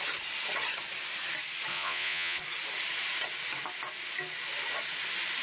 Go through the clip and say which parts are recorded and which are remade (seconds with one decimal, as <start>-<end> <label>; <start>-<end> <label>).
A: 0.0-1.7 recorded; 1.7-2.4 remade; 2.4-5.4 recorded